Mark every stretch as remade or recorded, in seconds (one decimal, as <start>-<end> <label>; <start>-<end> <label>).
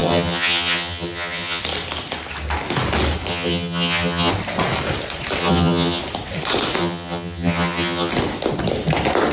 0.0-1.6 remade; 1.6-3.3 recorded; 3.3-4.3 remade; 4.3-5.4 recorded; 5.4-6.0 remade; 6.0-6.8 recorded; 6.8-8.1 remade; 8.1-9.3 recorded